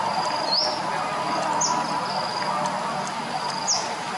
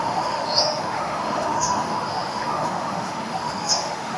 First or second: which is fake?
second